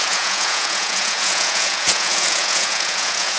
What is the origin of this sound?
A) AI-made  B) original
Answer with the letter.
A